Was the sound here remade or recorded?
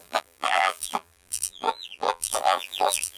remade